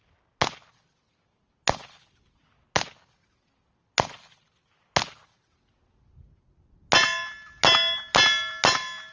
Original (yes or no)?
yes